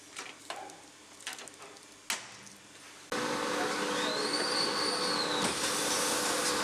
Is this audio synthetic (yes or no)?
no